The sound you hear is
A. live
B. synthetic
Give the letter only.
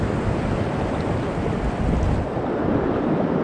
A